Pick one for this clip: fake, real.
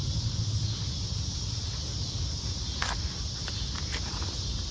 real